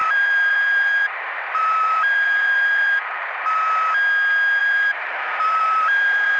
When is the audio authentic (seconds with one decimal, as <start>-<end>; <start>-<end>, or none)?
3.4-4.6